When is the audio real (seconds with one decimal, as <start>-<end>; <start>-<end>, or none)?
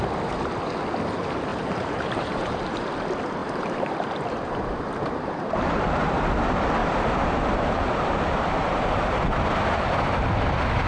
0.0-1.5; 2.9-3.4; 6.3-6.8; 10.5-10.9